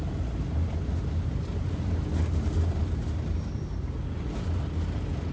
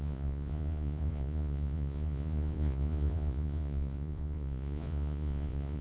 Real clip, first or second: first